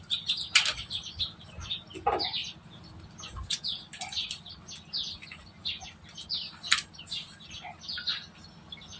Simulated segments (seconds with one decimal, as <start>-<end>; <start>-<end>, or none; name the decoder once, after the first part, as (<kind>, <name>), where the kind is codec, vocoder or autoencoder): none